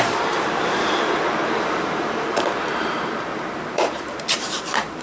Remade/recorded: remade